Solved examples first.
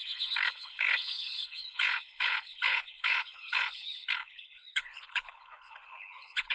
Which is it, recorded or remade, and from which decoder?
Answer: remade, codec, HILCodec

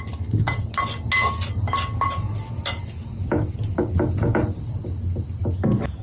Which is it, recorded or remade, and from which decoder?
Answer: recorded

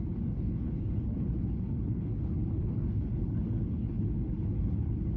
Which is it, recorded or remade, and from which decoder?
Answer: remade, codec, HILCodec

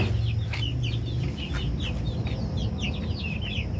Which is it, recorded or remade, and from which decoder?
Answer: recorded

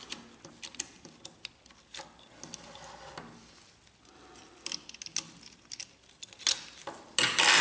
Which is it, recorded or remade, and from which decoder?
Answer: recorded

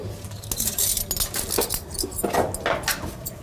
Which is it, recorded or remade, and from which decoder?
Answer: recorded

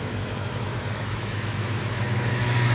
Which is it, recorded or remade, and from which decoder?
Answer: remade, autoencoder, DAC-VAE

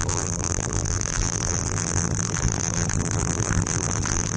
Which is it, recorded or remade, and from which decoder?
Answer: remade, vocoder, BigVGAN v2